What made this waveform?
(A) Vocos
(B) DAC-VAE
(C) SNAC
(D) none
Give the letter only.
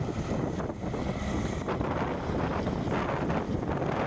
D